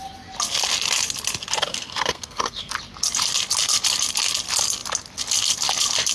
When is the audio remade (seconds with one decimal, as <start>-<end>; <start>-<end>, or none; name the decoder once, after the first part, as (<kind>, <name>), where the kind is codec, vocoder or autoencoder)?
1.7-2.7 (codec, SNAC)